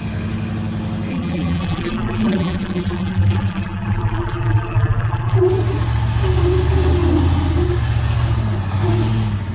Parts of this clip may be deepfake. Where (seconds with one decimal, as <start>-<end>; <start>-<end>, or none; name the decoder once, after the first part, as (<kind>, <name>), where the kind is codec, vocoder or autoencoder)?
1.1-5.5 (vocoder, BigVGAN v2)